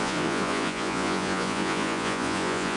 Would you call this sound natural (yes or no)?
no